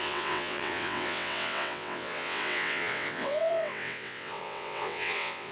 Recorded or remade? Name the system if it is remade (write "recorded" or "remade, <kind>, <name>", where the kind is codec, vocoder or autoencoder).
remade, vocoder, WaveNeXt